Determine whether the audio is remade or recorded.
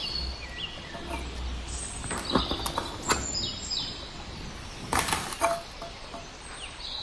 recorded